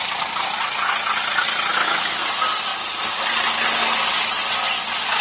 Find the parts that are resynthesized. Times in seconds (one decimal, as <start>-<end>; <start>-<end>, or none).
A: 1.7-2.2